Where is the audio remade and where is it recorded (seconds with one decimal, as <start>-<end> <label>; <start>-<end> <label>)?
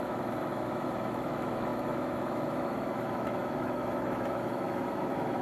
0.0-5.4 remade